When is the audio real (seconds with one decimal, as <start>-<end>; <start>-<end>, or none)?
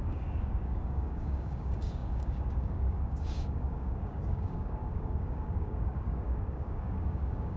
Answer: none